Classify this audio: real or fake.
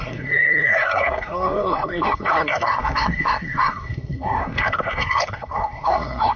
fake